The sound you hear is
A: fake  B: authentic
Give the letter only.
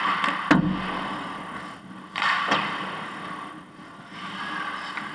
B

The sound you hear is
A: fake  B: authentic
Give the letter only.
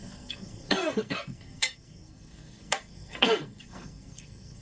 A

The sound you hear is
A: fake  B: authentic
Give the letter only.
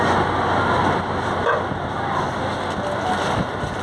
B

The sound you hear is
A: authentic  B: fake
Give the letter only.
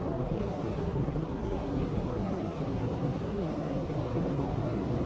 B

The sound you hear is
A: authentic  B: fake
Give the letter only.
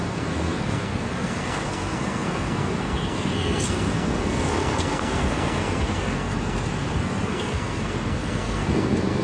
B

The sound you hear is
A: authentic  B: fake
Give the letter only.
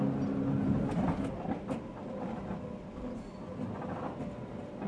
A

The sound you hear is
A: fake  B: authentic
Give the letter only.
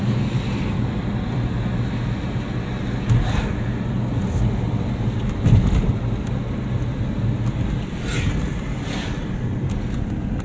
B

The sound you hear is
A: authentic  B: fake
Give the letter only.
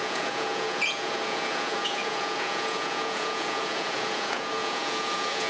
B